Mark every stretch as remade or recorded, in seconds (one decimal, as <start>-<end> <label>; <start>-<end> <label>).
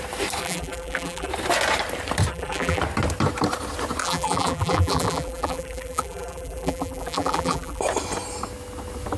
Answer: 0.0-0.4 recorded; 0.4-1.3 remade; 1.3-2.3 recorded; 2.3-2.8 remade; 2.8-4.0 recorded; 4.0-7.8 remade; 7.8-9.2 recorded